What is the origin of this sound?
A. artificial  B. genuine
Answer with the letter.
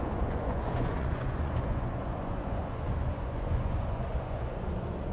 A